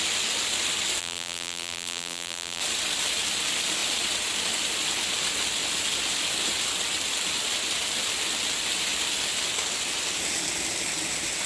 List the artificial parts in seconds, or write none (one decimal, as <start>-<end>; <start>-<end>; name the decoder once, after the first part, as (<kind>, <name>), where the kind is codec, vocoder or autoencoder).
1.0-2.6 (vocoder, BigVGAN v2)